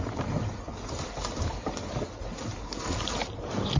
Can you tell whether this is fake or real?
real